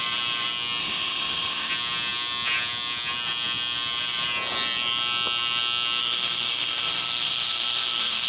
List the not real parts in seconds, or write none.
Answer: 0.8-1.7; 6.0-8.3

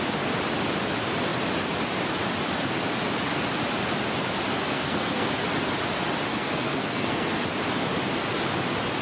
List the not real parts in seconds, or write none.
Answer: 4.6-5.3; 6.3-7.3

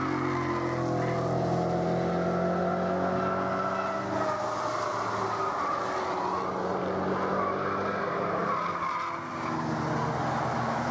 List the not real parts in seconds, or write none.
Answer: none

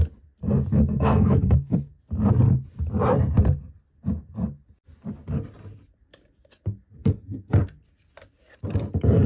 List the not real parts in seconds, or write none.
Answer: 0.7-2.0; 7.0-7.6

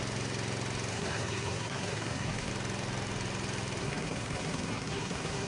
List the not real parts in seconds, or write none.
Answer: 0.9-2.5; 3.8-5.5

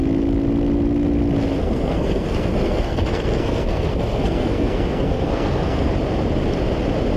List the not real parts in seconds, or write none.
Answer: 1.6-5.9

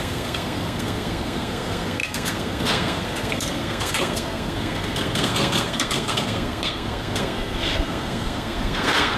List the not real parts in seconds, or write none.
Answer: 0.0-9.2